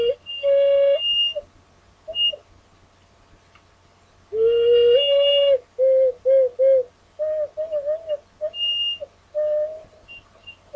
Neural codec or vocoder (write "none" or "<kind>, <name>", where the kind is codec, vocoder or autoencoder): none